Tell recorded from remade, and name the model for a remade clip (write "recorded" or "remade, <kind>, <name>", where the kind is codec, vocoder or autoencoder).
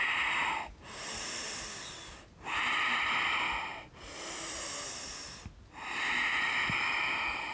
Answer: recorded